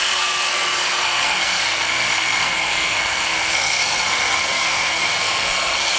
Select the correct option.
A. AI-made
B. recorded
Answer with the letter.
A